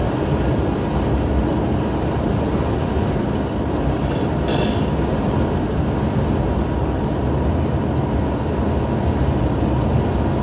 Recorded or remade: recorded